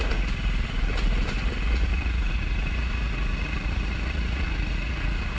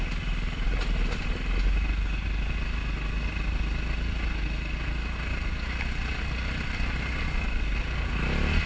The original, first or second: second